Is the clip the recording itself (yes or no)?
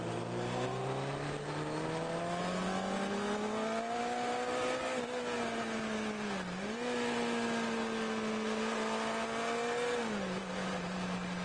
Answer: yes